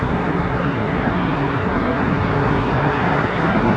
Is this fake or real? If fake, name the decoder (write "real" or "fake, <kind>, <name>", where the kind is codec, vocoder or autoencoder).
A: fake, codec, SNAC